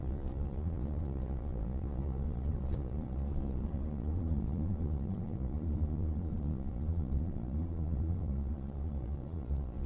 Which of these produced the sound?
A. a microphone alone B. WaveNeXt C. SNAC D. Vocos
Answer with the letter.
D